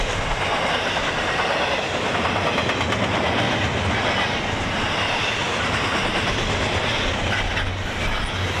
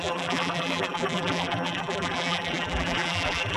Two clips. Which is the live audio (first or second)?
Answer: first